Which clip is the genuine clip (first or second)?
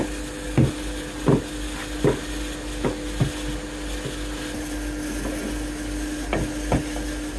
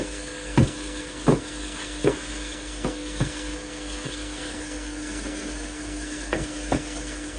first